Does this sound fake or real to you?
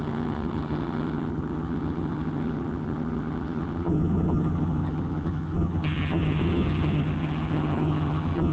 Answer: fake